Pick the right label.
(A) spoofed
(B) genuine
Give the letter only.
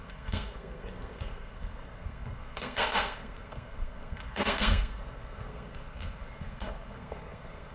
A